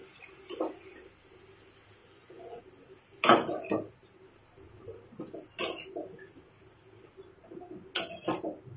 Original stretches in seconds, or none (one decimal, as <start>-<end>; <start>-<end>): 0.0-2.0; 2.6-8.8